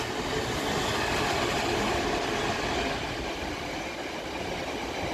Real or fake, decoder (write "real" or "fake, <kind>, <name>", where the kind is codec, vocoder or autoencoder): real